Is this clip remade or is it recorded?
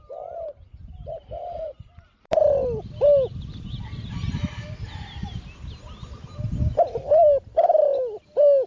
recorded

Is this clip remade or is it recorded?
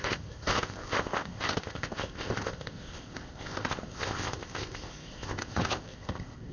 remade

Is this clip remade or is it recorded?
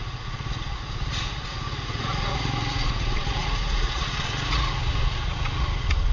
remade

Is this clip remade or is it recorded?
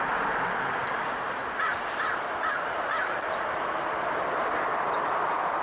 recorded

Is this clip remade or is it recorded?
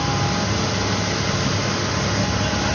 recorded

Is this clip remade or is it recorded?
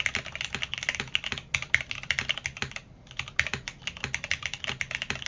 recorded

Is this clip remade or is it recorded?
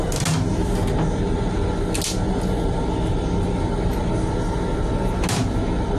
recorded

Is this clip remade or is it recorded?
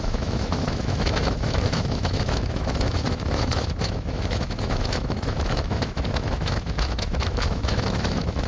remade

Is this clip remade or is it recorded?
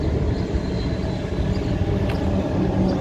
recorded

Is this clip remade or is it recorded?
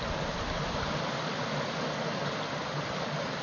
recorded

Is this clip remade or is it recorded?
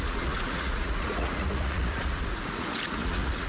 remade